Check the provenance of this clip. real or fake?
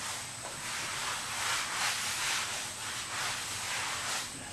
real